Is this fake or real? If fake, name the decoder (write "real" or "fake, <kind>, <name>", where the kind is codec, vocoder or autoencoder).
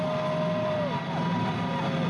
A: real